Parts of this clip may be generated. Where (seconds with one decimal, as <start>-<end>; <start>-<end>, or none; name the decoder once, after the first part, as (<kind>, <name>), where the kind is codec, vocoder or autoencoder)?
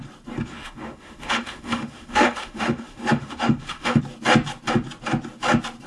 0.5-4.0 (autoencoder, DAC-VAE)